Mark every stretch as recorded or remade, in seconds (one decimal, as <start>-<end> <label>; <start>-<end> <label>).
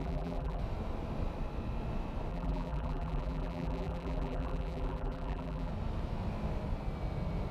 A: 0.0-0.6 remade; 0.6-2.3 recorded; 2.3-5.7 remade; 5.7-7.5 recorded